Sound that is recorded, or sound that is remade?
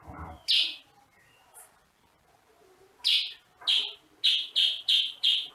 recorded